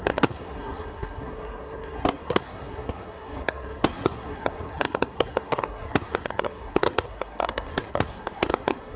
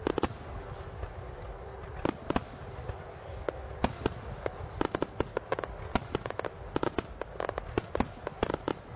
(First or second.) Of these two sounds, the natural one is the second